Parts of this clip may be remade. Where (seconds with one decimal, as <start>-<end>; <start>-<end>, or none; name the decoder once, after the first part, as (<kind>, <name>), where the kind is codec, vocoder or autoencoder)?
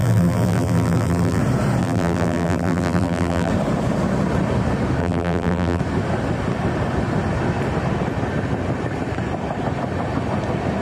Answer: 0.0-1.4 (vocoder, BigVGAN v2); 1.8-3.5; 5.0-5.8